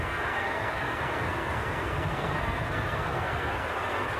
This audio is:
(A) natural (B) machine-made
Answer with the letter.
B